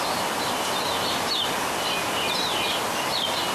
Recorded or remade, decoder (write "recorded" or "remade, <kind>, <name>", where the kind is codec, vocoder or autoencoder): recorded